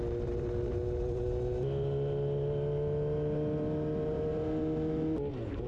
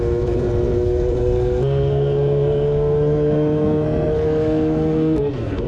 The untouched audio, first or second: first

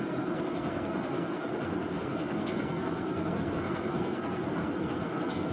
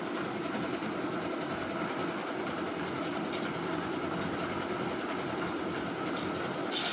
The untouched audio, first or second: second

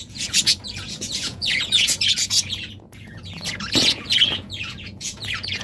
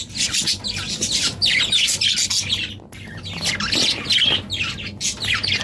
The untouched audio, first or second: second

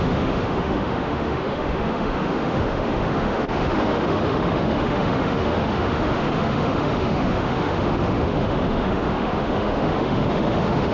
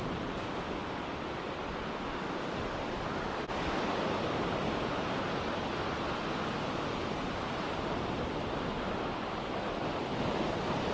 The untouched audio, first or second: second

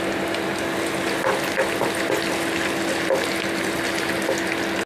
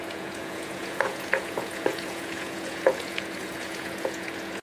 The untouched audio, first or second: first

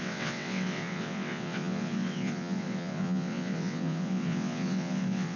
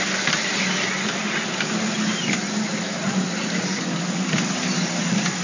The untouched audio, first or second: second